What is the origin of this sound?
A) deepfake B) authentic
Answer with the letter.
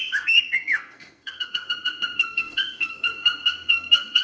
A